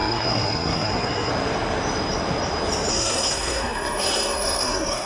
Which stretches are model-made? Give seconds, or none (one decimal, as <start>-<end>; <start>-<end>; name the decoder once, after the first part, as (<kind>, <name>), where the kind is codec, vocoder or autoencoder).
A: 0.0-1.3 (codec, SNAC); 2.9-5.1